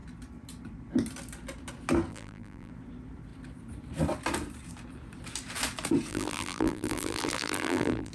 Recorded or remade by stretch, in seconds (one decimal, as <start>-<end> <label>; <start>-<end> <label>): 0.0-2.1 recorded; 2.1-2.7 remade; 2.7-6.1 recorded; 6.1-8.1 remade